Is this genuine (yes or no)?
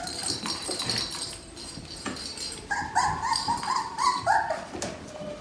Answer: no